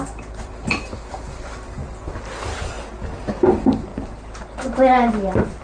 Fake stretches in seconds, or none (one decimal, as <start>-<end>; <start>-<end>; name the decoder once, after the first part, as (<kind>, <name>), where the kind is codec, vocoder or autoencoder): 0.0-1.8 (vocoder, BigVGAN v2); 3.3-3.9